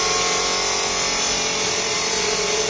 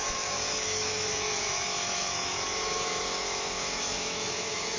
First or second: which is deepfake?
second